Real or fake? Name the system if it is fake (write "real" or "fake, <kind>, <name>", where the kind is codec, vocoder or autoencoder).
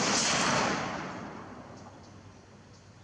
real